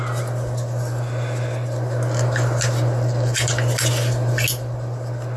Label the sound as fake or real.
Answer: real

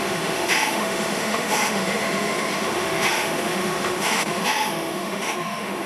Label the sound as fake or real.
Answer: fake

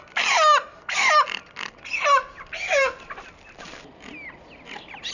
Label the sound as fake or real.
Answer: real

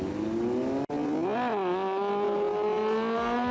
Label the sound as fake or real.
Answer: real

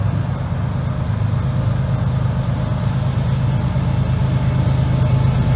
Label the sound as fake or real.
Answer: real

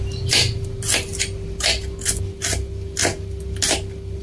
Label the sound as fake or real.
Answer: real